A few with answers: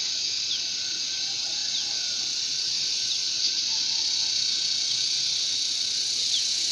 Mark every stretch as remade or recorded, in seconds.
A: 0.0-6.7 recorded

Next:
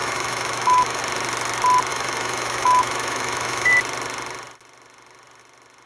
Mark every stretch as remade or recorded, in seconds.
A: 0.0-1.0 remade; 1.0-1.9 recorded; 1.9-3.7 remade; 3.7-5.9 recorded